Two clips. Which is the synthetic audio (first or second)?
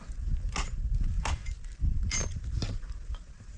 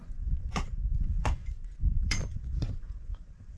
second